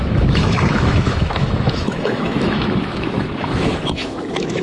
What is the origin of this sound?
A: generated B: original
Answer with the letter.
A